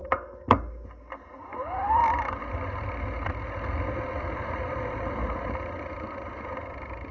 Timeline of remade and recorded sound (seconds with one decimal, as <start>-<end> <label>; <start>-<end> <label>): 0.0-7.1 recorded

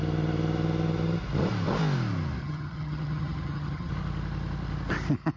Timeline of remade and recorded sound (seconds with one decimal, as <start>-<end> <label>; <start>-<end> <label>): 0.0-2.4 recorded; 2.4-3.9 remade; 3.9-5.4 recorded

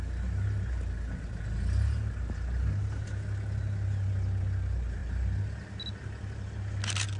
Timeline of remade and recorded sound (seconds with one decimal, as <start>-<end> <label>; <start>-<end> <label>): 0.0-7.2 recorded